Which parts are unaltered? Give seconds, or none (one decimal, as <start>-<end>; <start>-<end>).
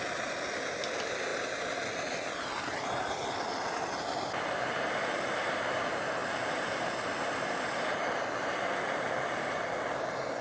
0.0-10.4